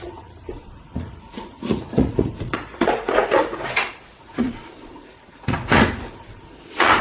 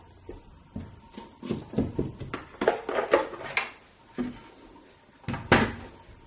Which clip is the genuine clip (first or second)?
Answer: second